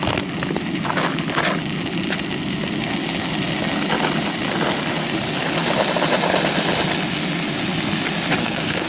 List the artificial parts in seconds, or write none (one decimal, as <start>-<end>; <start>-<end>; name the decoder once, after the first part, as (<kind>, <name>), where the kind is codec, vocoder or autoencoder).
8.4-8.9 (codec, SNAC)